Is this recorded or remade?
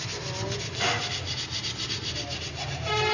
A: recorded